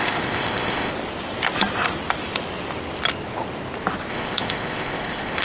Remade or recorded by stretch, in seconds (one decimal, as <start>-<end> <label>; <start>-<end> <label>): 0.0-0.9 remade; 0.9-4.1 recorded; 4.1-5.4 remade

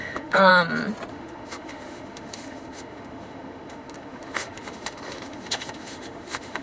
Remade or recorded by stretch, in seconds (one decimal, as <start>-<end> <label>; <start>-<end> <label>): 0.0-0.5 remade; 0.5-1.1 recorded; 1.1-6.6 remade